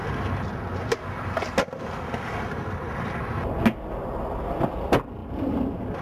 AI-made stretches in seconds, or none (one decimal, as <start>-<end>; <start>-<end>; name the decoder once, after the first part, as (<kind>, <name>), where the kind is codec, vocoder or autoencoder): none